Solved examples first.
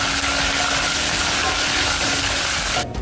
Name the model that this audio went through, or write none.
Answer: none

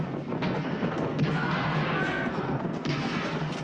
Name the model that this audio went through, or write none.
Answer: codec, SNAC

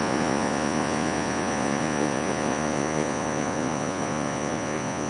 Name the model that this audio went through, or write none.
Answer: vocoder, Vocos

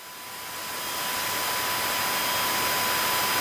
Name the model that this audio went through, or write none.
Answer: none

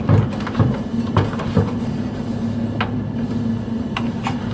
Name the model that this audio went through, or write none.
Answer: none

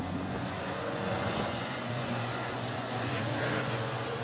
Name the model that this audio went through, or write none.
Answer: vocoder, Vocos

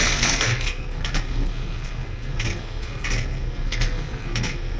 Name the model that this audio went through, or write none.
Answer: codec, SNAC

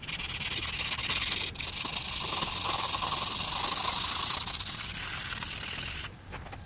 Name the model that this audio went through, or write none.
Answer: none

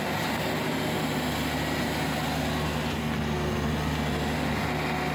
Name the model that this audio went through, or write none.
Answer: none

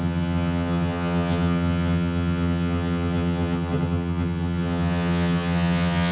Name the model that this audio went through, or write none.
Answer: vocoder, HiFi-GAN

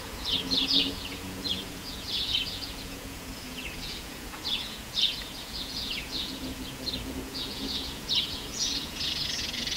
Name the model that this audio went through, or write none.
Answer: vocoder, Vocos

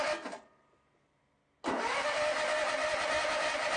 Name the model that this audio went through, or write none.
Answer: none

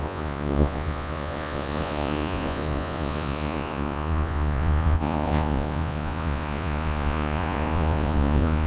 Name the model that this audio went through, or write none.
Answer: vocoder, Vocos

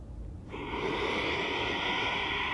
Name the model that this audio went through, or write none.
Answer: none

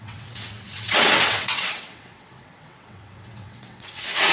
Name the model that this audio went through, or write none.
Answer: vocoder, WaveNeXt